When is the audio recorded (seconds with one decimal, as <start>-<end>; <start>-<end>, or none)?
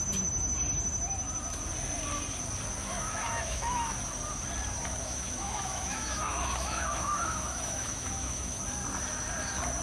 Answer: 0.0-2.8; 4.0-5.0; 8.6-9.8